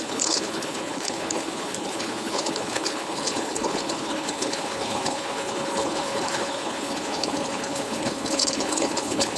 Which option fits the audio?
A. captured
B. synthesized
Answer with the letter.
B